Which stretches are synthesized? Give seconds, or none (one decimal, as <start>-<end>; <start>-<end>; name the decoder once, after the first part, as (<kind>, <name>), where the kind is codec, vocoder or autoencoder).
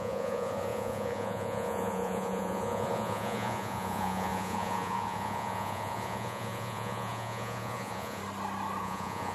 0.0-8.2 (vocoder, Vocos); 8.8-9.3